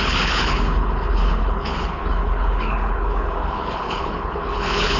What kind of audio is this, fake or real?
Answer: fake